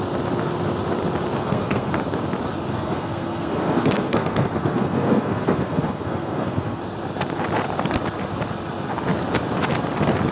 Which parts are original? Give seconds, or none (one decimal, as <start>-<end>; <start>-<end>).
0.0-1.4; 1.9-2.7; 6.8-10.3